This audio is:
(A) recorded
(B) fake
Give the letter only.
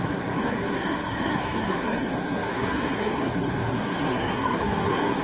B